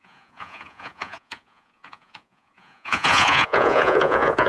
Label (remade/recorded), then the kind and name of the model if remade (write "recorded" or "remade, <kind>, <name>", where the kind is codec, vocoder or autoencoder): remade, vocoder, Vocos